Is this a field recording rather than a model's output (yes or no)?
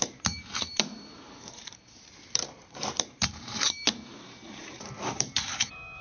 no